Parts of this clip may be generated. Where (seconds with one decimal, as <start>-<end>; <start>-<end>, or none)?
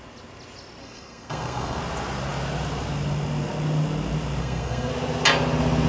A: 0.8-1.8; 4.4-4.9